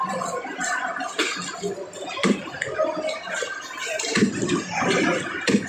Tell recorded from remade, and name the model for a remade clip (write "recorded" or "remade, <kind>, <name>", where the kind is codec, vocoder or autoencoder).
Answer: recorded